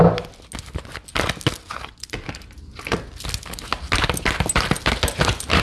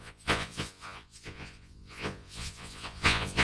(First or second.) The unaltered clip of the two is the first